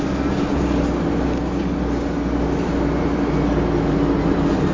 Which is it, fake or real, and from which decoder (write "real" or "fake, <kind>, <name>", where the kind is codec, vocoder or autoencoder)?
real